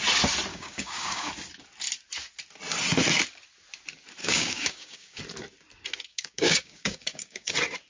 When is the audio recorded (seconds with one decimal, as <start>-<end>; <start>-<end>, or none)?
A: 0.0-0.5; 1.3-4.2; 5.2-6.1; 7.5-7.9